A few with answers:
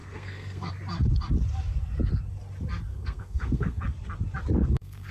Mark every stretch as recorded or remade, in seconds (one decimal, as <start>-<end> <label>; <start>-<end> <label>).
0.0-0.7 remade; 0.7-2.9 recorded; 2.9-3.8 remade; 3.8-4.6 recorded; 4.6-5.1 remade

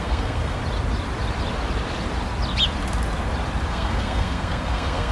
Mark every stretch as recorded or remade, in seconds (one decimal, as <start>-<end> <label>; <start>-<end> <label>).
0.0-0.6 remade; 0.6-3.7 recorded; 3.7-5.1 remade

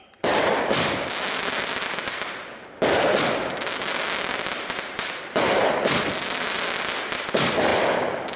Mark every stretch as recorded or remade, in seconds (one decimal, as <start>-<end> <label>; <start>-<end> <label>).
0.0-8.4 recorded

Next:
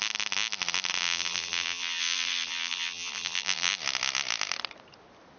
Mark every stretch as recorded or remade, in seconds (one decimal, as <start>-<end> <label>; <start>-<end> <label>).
0.0-1.0 recorded; 1.0-3.7 remade; 3.7-5.4 recorded

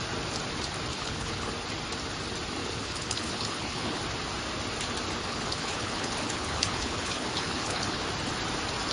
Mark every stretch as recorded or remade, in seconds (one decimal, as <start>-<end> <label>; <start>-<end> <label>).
0.0-0.9 recorded; 0.9-1.5 remade; 1.5-2.6 recorded; 2.6-4.0 remade; 4.0-5.2 recorded; 5.2-8.1 remade; 8.1-8.9 recorded